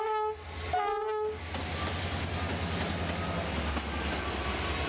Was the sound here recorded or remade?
recorded